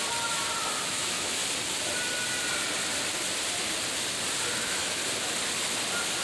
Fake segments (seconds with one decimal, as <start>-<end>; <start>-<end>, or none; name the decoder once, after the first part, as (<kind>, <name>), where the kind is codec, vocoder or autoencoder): 0.8-1.4 (autoencoder, DAC-VAE); 4.6-5.0